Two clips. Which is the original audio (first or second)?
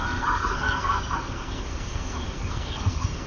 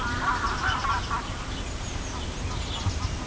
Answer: second